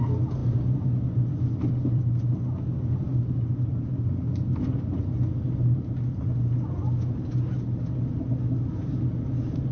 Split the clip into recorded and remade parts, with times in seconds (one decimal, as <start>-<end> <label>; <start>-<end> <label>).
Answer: 0.0-0.4 recorded; 0.4-2.2 remade; 2.2-9.7 recorded